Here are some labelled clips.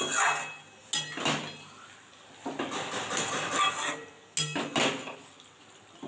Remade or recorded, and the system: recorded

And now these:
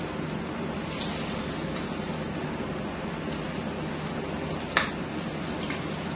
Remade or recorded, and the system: recorded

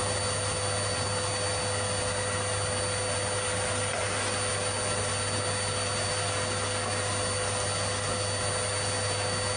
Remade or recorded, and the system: recorded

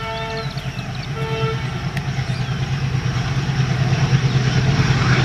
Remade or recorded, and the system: recorded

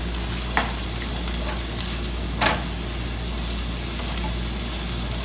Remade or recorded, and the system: recorded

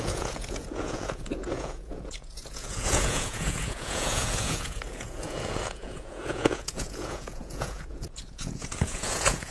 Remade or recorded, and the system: remade, vocoder, Vocos